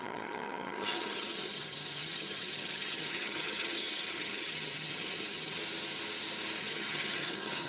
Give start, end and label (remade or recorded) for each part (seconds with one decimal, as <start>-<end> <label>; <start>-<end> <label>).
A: 0.0-5.6 remade; 5.6-6.6 recorded; 6.6-7.7 remade